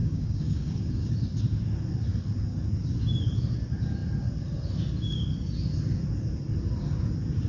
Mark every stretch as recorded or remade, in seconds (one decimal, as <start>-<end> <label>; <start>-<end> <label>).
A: 0.0-1.1 remade; 1.1-7.5 recorded